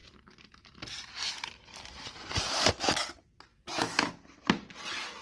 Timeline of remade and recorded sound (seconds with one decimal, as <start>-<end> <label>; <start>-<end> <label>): 0.0-3.5 recorded; 3.5-4.1 remade; 4.1-5.2 recorded